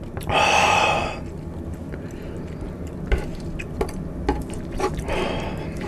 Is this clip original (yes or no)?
yes